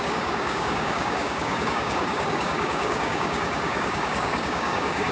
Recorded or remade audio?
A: remade